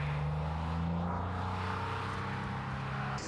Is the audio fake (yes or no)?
no